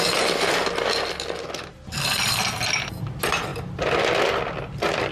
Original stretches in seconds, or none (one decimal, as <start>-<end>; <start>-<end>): 0.0-5.1